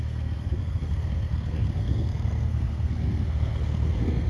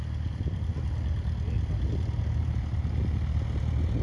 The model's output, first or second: first